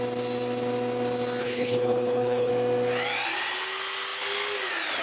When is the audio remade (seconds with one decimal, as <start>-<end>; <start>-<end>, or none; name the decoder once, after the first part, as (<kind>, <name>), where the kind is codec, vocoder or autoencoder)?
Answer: 1.4-2.5 (codec, HILCodec)